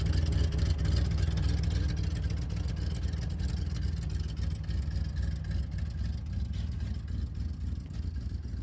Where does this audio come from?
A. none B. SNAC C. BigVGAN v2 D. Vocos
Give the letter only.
A